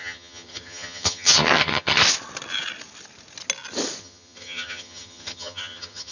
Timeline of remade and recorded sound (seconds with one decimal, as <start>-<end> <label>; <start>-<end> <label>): 0.0-2.0 remade; 2.0-4.0 recorded; 4.0-6.1 remade